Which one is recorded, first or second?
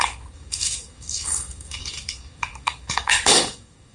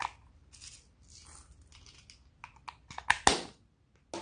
second